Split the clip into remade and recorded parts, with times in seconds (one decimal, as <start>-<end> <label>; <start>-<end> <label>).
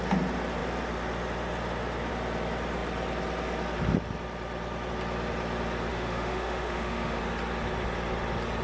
0.0-5.9 recorded; 5.9-7.2 remade; 7.2-8.6 recorded